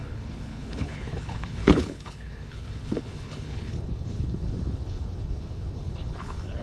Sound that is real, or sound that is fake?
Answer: fake